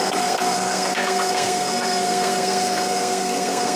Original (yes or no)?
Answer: no